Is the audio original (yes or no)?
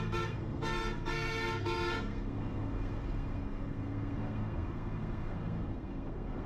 no